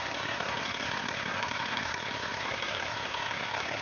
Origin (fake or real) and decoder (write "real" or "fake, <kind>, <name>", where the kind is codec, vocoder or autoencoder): fake, codec, SNAC